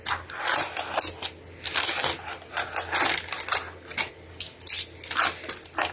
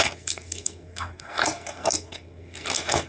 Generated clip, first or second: second